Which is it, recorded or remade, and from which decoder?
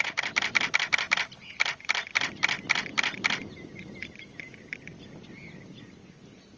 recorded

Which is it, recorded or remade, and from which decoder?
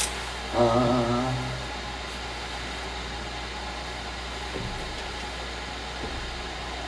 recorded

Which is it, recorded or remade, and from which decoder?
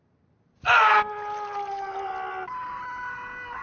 recorded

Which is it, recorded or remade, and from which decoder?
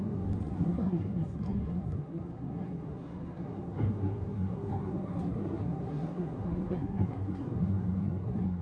remade, codec, SNAC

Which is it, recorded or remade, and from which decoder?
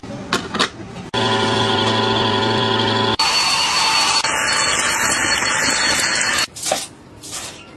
recorded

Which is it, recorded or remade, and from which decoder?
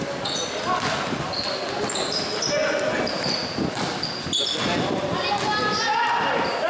recorded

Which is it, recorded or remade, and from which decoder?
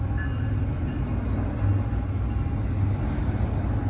recorded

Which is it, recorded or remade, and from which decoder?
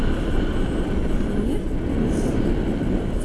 recorded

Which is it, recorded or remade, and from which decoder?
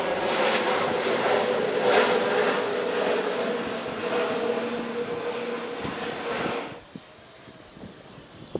recorded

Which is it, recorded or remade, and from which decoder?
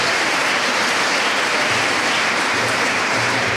remade, vocoder, BigVGAN v2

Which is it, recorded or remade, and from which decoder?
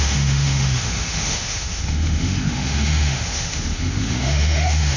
remade, autoencoder, DAC-VAE